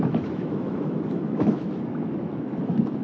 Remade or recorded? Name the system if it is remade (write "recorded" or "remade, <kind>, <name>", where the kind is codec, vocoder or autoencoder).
remade, autoencoder, DAC-VAE